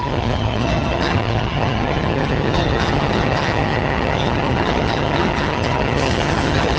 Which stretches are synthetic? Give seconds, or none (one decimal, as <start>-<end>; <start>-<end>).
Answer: 0.0-6.8